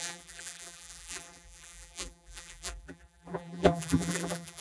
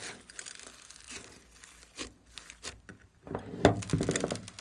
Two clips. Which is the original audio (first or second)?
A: second